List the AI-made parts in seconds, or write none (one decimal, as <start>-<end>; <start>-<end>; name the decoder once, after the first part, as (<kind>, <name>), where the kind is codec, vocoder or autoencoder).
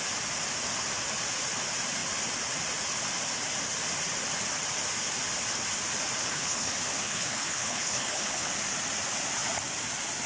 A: 6.2-8.5 (codec, HILCodec)